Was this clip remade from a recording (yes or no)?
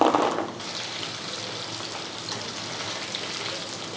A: yes